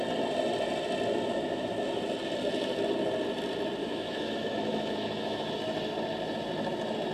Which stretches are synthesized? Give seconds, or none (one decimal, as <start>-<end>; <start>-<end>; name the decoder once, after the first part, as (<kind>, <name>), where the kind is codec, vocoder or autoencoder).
3.8-5.5 (autoencoder, DAC-VAE)